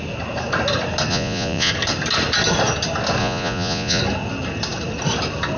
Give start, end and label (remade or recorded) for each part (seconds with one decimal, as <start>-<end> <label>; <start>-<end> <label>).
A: 0.0-1.1 recorded; 1.1-1.7 remade; 1.7-3.2 recorded; 3.2-4.0 remade; 4.0-5.6 recorded